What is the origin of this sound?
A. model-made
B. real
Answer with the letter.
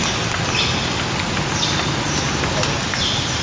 B